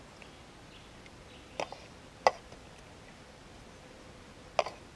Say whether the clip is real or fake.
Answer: real